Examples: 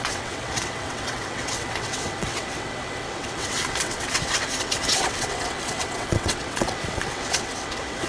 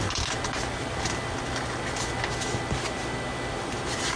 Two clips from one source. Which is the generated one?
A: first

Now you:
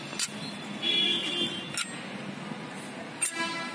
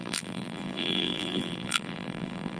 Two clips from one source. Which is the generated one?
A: second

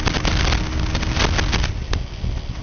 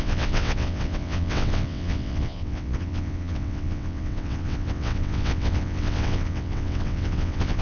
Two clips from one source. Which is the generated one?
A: second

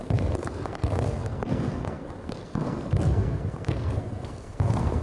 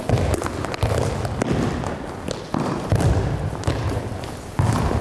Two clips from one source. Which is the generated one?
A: first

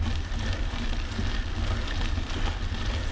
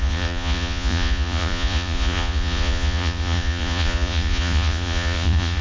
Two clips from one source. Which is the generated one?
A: second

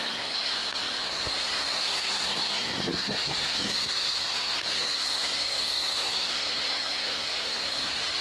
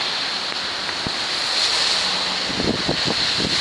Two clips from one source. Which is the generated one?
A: first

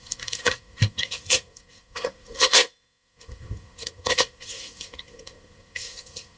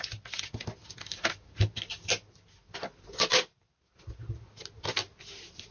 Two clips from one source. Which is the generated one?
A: first